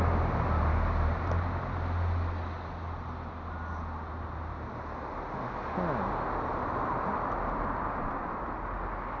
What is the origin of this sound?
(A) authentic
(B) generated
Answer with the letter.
A